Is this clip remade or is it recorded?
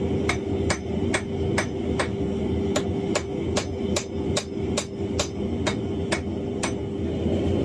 recorded